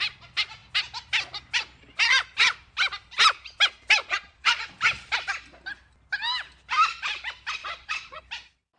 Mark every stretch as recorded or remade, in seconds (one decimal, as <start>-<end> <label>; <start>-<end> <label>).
0.0-4.0 recorded; 4.0-4.7 remade; 4.7-7.6 recorded; 7.6-8.2 remade; 8.2-8.8 recorded